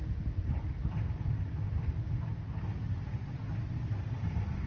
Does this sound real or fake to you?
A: real